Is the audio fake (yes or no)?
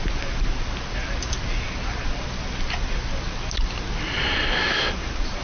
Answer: no